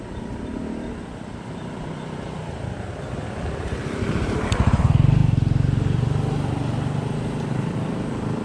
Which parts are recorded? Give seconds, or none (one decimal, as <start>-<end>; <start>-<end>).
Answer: 5.2-7.5